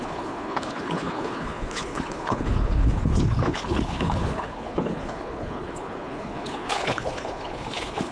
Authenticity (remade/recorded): remade